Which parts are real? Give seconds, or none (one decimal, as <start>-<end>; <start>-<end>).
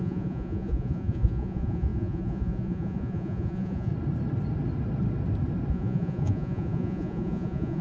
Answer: 3.9-5.7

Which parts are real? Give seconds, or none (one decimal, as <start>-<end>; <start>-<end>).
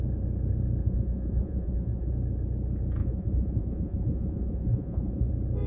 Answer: 0.0-0.8; 2.1-3.0; 5.3-5.7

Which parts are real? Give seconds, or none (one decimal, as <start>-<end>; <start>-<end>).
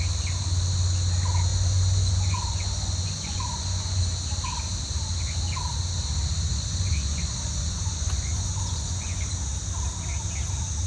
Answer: 0.0-1.5; 4.0-6.5; 9.3-10.9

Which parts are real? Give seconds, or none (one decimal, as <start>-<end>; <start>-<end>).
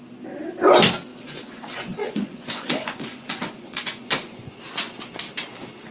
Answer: 0.0-1.1; 4.6-5.9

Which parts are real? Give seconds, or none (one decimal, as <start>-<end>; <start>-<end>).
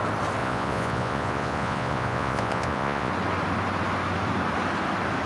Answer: 0.0-0.4; 3.1-5.3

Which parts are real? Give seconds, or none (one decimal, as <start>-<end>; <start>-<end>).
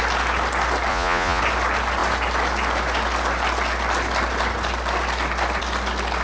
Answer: 0.0-0.9; 1.4-6.2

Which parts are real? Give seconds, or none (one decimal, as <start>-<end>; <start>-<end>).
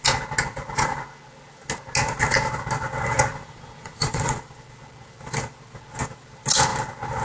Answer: 0.0-3.3; 4.3-7.2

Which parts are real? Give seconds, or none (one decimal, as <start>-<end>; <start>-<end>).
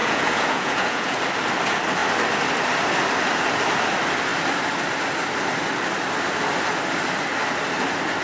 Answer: 1.2-8.2